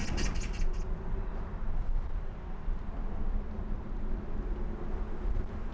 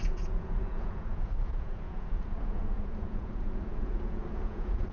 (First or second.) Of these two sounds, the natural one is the first